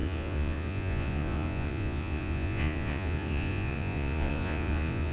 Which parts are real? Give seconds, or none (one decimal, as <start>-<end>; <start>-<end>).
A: none

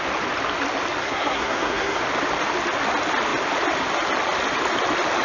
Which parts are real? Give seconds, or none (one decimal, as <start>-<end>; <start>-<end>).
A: 0.0-1.0; 2.0-5.2

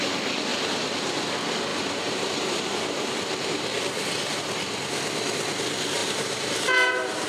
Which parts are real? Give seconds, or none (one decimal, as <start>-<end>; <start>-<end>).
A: 0.0-1.7; 4.4-6.0

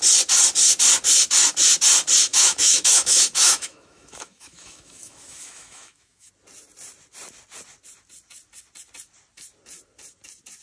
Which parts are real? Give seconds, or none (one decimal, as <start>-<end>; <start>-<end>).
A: 0.0-2.3; 6.3-10.6

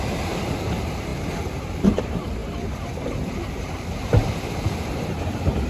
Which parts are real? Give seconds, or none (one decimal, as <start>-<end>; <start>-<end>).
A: none

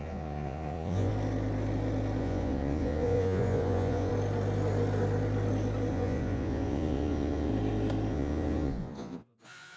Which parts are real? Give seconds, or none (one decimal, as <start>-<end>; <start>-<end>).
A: 1.1-2.2; 4.1-5.9; 7.5-8.1

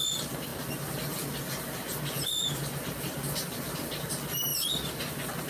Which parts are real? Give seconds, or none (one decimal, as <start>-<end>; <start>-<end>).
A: 0.0-5.5

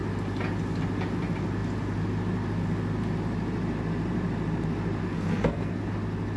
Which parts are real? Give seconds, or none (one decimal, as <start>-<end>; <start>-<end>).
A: 0.0-5.0; 5.8-6.4